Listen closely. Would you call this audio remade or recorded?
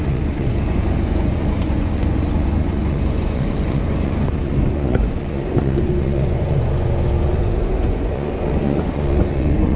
remade